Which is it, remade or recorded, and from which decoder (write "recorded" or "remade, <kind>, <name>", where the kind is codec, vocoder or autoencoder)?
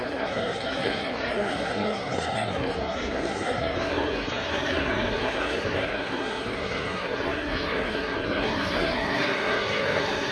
remade, codec, SNAC